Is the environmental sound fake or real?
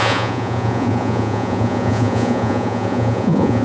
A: fake